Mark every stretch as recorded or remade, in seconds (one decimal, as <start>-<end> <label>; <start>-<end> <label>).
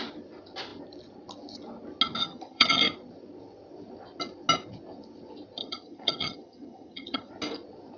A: 0.0-2.2 recorded; 2.2-2.8 remade; 2.8-5.6 recorded; 5.6-7.3 remade; 7.3-8.0 recorded